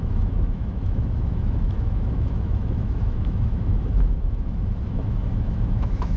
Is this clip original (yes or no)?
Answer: no